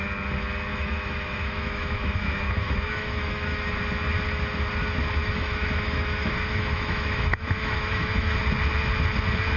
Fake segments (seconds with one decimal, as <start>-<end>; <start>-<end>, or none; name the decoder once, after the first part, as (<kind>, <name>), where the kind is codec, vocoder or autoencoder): 0.7-3.7 (autoencoder, DAC-VAE); 5.2-8.4